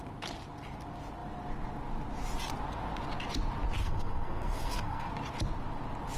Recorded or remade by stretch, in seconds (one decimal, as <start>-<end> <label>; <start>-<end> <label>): 0.0-3.8 recorded; 3.8-5.1 remade; 5.1-6.2 recorded